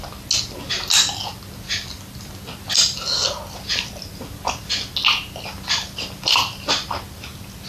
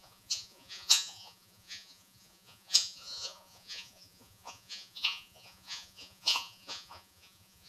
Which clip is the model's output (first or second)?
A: second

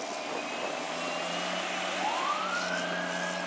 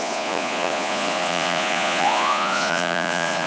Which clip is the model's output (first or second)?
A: second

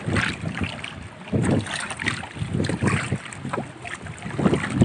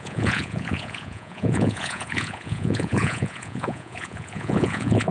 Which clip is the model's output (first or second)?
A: second